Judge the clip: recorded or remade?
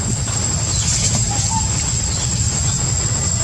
recorded